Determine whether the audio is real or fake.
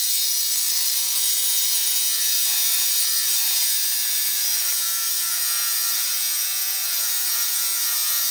fake